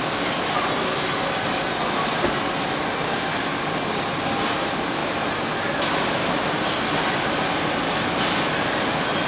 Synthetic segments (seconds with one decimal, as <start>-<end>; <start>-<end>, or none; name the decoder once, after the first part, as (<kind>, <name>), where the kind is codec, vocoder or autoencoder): none

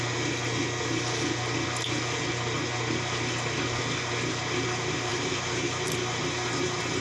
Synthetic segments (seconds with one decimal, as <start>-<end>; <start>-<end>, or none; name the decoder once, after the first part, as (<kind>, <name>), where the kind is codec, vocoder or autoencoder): 5.1-6.2 (vocoder, BigVGAN v2)

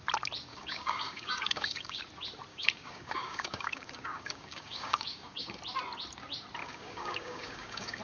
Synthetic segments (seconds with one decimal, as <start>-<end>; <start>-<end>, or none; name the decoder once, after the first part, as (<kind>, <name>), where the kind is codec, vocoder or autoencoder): 0.5-2.0 (codec, DAC); 2.5-5.6; 6.6-8.0

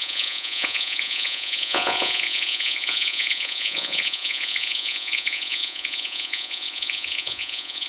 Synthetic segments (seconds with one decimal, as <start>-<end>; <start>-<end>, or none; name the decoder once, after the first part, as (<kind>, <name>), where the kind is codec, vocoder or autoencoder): 0.0-7.9 (vocoder, Vocos)